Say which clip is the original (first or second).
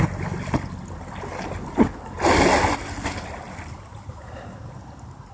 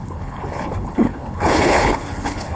first